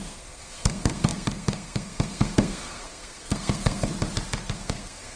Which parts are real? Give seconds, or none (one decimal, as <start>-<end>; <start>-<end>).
3.9-4.5